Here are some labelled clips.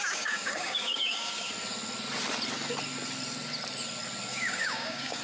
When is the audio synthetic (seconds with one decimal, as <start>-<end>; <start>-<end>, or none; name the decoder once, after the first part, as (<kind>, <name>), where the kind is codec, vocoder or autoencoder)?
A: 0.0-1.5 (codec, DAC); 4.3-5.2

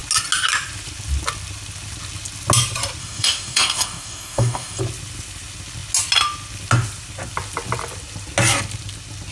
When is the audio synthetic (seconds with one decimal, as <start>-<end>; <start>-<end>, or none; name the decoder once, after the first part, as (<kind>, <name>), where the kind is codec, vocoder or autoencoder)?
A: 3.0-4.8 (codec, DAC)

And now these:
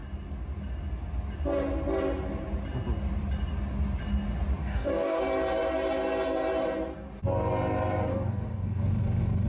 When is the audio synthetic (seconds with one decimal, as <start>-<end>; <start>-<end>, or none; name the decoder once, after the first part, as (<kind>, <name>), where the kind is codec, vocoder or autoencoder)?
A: 4.6-5.2 (codec, DAC); 8.1-9.5

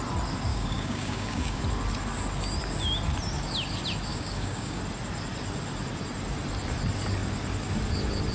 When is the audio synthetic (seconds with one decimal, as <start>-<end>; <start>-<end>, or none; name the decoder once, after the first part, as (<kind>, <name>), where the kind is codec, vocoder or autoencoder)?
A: 0.5-1.6 (codec, DAC); 4.1-4.8

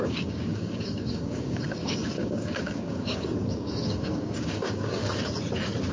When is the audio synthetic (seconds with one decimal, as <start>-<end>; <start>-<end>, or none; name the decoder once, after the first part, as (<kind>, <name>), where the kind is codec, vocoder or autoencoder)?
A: 0.0-5.0 (codec, DAC)

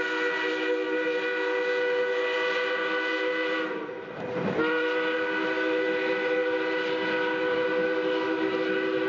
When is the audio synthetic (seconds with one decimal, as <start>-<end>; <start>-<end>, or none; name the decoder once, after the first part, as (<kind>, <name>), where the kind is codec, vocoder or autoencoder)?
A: none

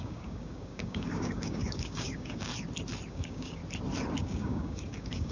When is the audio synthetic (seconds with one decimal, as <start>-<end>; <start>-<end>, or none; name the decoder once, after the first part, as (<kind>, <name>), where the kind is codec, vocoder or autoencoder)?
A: 0.0-2.5 (codec, DAC); 3.1-3.6; 4.2-5.3